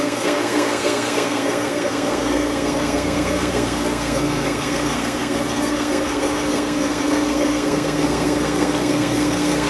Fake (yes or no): yes